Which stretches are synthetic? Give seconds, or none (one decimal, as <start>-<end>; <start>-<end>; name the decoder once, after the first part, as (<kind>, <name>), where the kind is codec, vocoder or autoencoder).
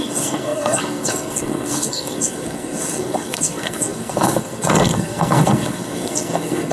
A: 0.0-6.7 (codec, SNAC)